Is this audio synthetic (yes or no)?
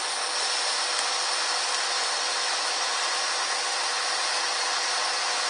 no